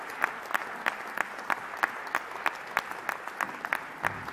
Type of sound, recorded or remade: recorded